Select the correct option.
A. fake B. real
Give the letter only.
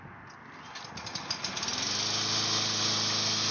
B